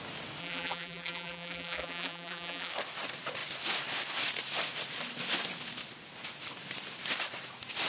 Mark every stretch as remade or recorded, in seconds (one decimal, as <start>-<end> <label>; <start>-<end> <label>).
0.0-0.4 recorded; 0.4-2.7 remade; 2.7-7.9 recorded